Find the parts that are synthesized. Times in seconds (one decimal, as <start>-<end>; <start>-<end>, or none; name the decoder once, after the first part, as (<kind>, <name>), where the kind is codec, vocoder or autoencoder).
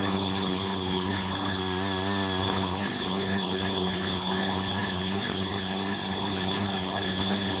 0.0-1.6 (codec, HILCodec); 2.4-7.6